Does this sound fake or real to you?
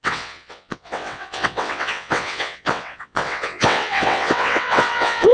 fake